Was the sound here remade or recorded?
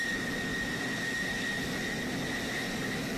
recorded